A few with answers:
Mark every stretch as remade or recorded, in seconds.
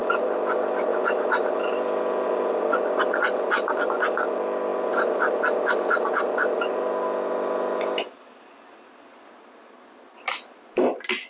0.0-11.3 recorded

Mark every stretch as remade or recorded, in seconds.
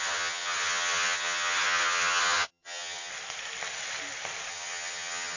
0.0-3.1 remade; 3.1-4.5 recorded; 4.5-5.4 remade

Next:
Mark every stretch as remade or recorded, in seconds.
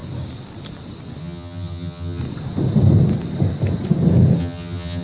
0.0-1.2 recorded; 1.2-2.2 remade; 2.2-4.4 recorded; 4.4-5.0 remade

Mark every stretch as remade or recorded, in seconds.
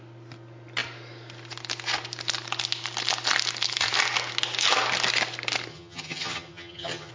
0.0-5.7 recorded; 5.7-7.1 remade